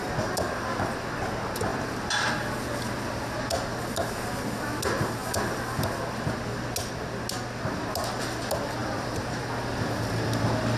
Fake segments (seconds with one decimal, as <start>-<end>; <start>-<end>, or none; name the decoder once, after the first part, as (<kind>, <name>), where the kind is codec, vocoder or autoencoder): 1.7-2.3 (vocoder, BigVGAN v2); 8.8-9.4

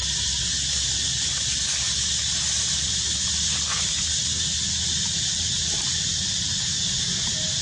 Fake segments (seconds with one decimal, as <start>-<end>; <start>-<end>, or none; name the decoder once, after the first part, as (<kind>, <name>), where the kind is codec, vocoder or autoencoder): none

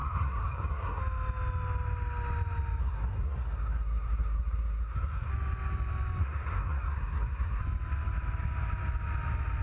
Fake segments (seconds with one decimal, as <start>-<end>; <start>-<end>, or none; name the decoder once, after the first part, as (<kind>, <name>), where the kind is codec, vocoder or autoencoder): 0.0-1.0 (codec, SNAC); 2.8-5.3; 6.2-7.6

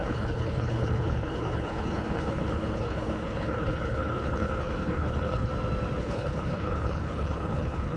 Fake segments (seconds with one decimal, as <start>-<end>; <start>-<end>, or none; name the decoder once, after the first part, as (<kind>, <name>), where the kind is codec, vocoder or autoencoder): 0.0-5.5 (codec, HILCodec); 6.0-8.0

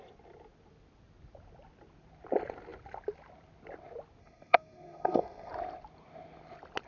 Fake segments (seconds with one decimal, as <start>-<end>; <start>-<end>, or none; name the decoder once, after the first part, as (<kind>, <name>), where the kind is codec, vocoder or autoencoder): 4.2-5.5 (codec, SNAC)

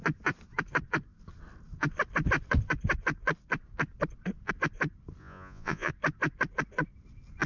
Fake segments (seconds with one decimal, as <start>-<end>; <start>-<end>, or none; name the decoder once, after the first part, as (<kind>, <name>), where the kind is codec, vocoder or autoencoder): 5.2-5.9 (vocoder, Vocos)